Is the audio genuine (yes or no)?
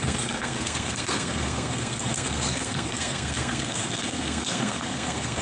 no